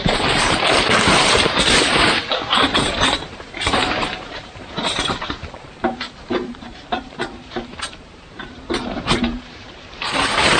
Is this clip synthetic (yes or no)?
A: yes